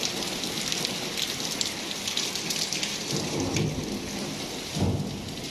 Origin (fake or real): real